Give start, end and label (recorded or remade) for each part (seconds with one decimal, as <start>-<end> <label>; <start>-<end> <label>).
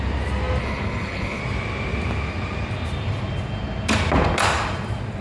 0.0-0.6 recorded; 0.6-1.4 remade; 1.4-5.2 recorded